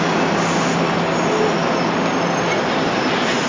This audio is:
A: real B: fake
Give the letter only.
A